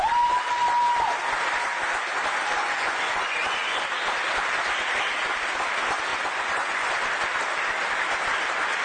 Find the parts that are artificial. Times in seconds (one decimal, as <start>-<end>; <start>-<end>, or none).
2.6-3.8; 6.1-6.9

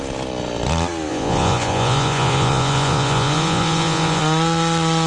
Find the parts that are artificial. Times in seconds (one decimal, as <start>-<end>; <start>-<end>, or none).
1.1-4.2

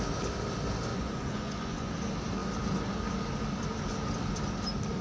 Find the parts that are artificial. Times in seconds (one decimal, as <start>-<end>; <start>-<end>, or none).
0.9-1.9

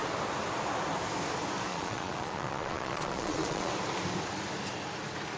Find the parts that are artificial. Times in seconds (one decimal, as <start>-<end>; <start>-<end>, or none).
1.7-3.7

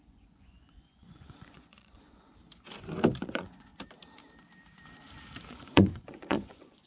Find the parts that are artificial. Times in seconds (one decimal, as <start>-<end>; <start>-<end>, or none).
0.0-2.3; 3.2-3.7; 5.5-6.9

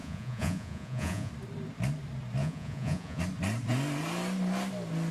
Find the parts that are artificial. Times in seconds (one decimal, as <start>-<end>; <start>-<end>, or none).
0.0-1.3; 2.4-3.2